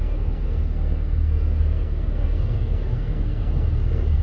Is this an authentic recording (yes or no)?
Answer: no